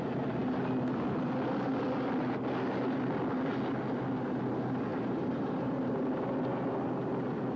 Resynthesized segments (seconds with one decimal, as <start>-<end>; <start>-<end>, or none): 4.9-5.7